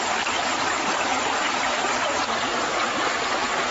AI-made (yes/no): no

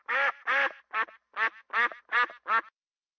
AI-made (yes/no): no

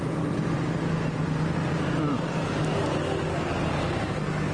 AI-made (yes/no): no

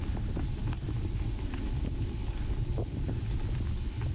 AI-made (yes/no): no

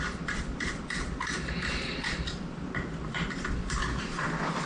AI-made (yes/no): yes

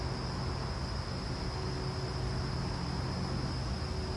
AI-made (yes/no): no